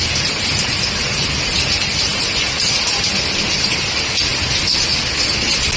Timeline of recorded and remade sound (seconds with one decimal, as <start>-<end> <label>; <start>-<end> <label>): 0.0-5.8 recorded